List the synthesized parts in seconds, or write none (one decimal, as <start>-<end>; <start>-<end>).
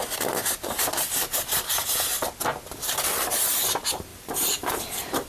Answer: 4.1-5.3